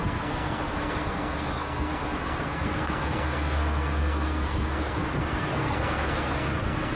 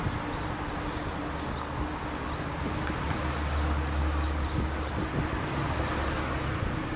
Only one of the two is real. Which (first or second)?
second